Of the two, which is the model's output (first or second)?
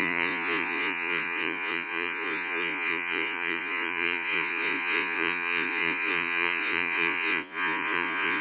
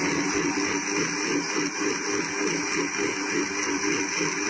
first